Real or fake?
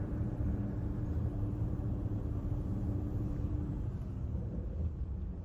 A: fake